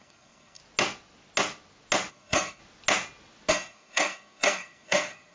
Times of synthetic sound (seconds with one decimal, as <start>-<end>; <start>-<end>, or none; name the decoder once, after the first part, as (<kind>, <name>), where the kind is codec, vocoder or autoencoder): 0.0-0.6 (codec, SNAC); 2.1-2.6; 3.5-5.3